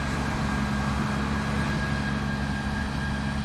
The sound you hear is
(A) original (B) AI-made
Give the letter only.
A